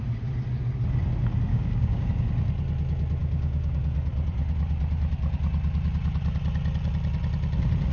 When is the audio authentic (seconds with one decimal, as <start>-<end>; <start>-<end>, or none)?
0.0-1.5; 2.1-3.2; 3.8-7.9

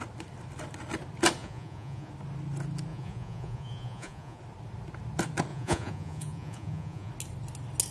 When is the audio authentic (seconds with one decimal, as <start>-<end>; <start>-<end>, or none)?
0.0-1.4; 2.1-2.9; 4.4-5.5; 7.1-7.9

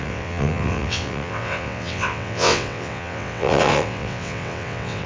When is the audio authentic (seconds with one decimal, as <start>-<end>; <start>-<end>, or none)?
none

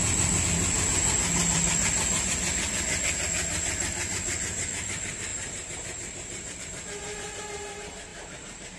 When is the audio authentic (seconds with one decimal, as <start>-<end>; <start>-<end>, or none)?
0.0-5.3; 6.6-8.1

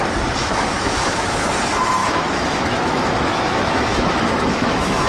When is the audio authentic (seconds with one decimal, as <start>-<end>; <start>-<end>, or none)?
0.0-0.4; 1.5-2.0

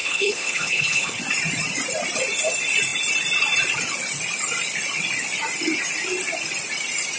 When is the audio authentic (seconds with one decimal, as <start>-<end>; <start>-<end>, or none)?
1.2-7.2

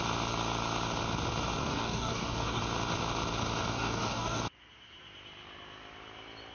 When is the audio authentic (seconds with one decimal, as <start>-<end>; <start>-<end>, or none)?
0.0-1.6; 2.6-3.7; 4.4-6.5

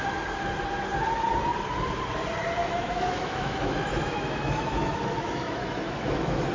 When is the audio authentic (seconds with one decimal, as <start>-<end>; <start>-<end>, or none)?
0.0-2.6